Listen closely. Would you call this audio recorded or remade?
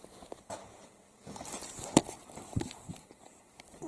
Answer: recorded